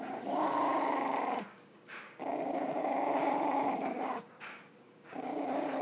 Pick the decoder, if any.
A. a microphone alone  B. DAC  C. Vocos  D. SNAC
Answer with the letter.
B